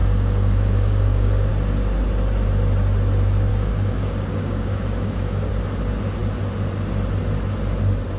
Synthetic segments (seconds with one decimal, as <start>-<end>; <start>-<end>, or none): 0.0-1.5; 3.5-5.5